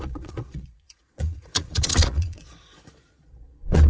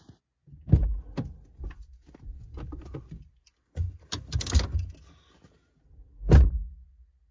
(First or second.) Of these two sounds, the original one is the second